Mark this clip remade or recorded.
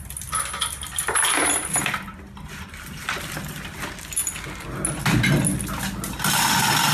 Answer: recorded